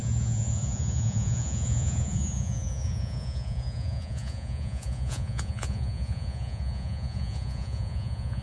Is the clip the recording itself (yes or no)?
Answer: no